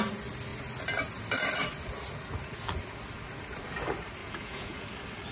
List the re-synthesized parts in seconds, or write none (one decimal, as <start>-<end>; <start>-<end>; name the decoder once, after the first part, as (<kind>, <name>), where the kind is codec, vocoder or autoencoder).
4.2-4.8 (vocoder, Vocos)